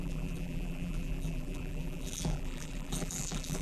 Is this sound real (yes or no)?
no